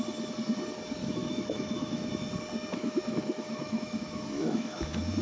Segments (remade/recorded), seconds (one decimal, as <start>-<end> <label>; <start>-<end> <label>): 0.0-1.0 recorded; 1.0-2.1 remade; 2.1-2.8 recorded; 2.8-5.2 remade